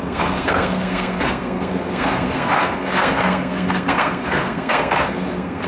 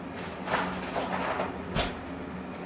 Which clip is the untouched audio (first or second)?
second